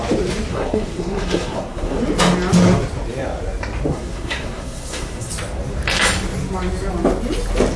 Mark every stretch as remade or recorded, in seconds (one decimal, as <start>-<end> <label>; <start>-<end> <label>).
0.0-0.5 recorded; 0.5-2.0 remade; 2.0-3.9 recorded; 3.9-5.3 remade; 5.3-7.8 recorded